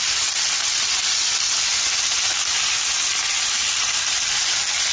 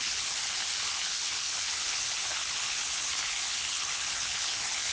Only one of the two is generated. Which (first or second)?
second